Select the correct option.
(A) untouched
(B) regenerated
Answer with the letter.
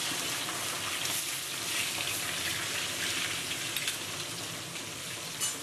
A